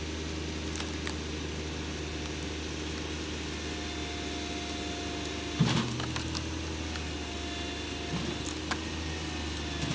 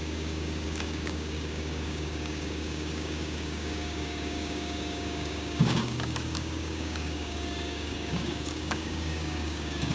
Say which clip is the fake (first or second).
second